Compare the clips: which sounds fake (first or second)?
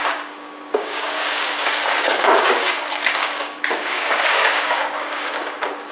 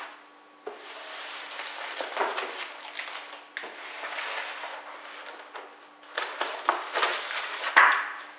first